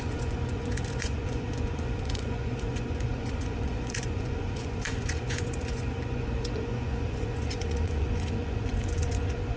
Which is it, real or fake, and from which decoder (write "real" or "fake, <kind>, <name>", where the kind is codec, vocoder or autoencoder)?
fake, vocoder, Vocos